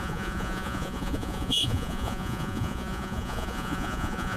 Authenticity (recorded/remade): remade